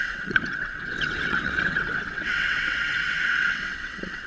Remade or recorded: remade